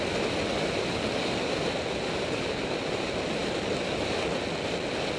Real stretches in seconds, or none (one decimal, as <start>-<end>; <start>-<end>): 0.0-5.2